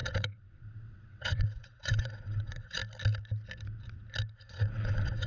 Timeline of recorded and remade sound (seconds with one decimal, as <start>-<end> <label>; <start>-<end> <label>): 0.0-2.8 remade; 2.8-4.5 recorded; 4.5-5.3 remade